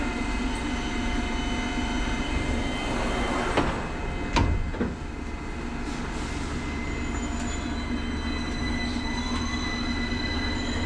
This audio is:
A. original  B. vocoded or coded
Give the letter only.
A